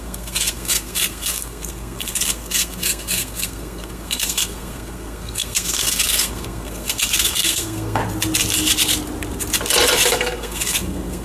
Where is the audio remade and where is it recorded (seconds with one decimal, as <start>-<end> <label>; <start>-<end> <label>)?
0.0-8.0 remade; 8.0-10.1 recorded; 10.1-11.2 remade